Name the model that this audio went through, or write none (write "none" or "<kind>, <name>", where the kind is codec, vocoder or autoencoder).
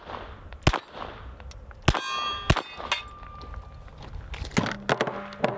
none